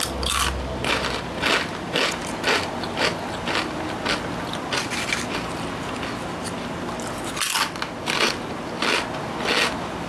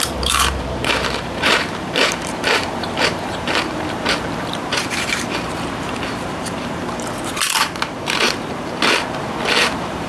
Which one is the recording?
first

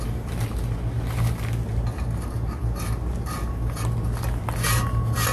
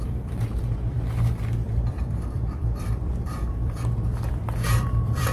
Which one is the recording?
first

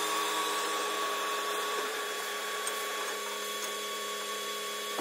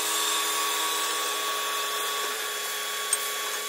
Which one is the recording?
second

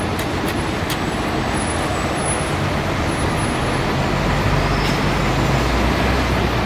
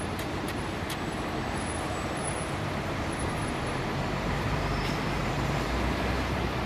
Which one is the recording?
first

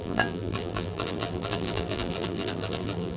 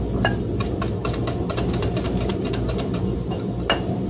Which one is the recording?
second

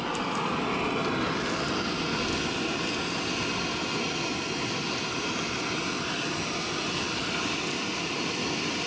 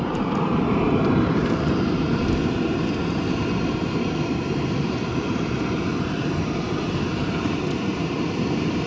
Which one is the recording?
first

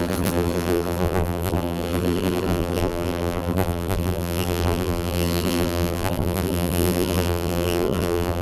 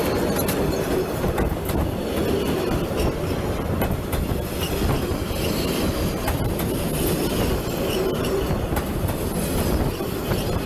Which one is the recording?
second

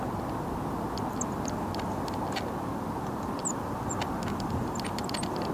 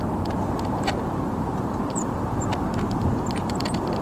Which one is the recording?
first